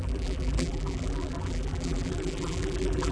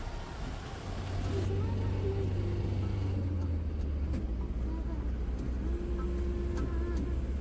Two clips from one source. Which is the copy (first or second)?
first